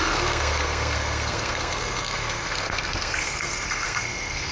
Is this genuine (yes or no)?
no